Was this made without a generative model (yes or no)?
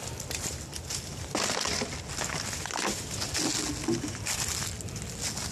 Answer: yes